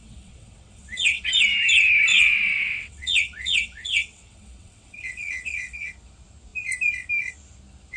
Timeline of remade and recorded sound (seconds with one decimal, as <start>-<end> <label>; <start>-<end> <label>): 0.0-1.3 remade; 1.3-2.1 recorded; 2.1-5.9 remade; 5.9-8.0 recorded